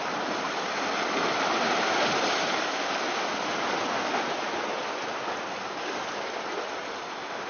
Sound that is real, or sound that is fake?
real